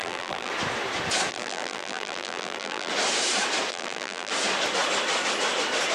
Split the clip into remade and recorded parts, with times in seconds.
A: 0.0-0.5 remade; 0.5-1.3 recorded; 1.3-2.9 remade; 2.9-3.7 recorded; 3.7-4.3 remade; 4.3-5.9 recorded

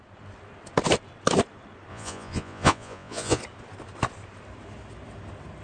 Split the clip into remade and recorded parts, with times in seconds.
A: 0.0-1.9 recorded; 1.9-3.4 remade; 3.4-5.6 recorded

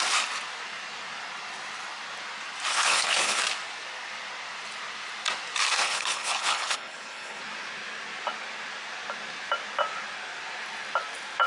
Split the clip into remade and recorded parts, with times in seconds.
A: 0.0-2.7 recorded; 2.7-3.4 remade; 3.4-5.8 recorded; 5.8-7.4 remade; 7.4-11.5 recorded

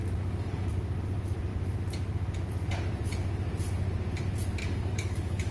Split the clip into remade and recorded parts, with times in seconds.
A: 0.0-0.7 remade; 0.7-4.6 recorded; 4.6-5.5 remade